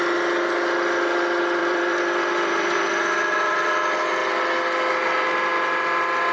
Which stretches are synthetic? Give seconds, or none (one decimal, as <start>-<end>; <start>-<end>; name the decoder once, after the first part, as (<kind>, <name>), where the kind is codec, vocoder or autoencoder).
1.6-2.9 (vocoder, BigVGAN v2)